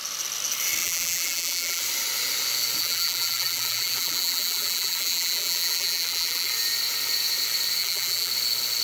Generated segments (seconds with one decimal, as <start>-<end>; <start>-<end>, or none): 0.8-1.8; 2.8-6.5; 7.8-8.3